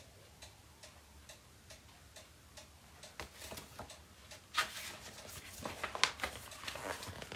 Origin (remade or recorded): recorded